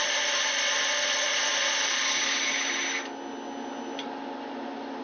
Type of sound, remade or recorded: recorded